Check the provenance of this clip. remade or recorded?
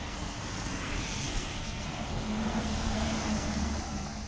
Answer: remade